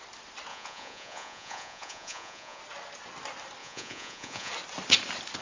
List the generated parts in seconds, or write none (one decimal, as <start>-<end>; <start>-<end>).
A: 0.5-2.6; 3.6-4.5